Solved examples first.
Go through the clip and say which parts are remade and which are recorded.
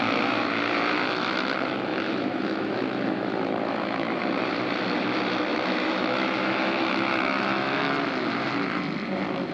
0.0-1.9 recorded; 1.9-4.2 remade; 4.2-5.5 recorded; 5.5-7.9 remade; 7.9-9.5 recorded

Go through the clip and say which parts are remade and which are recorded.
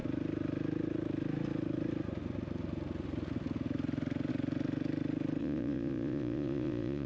0.0-5.4 recorded; 5.4-7.1 remade